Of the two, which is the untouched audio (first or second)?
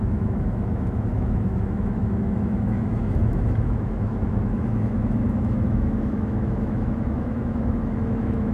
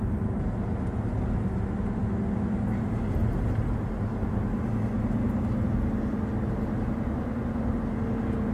second